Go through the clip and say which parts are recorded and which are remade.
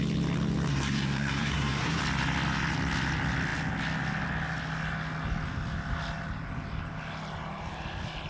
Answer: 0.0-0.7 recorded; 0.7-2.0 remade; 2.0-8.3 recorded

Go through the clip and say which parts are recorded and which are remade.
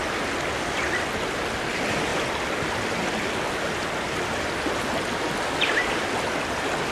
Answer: 0.0-6.9 recorded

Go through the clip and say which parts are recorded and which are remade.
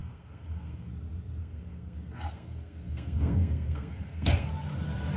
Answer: 0.0-0.9 remade; 0.9-1.4 recorded; 1.4-4.5 remade; 4.5-5.2 recorded